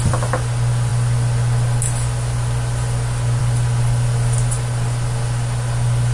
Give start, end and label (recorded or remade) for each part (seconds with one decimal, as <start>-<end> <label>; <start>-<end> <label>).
0.0-6.1 recorded